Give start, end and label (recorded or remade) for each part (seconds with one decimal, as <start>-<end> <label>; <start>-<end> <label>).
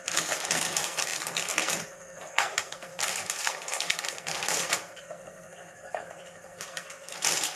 0.0-7.6 remade